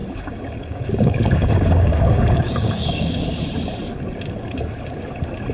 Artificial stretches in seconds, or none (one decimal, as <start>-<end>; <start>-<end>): 0.0-3.3